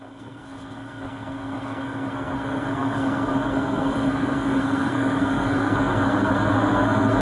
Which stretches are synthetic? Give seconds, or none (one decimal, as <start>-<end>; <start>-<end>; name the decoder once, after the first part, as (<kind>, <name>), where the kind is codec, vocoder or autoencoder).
0.0-7.2 (codec, SNAC)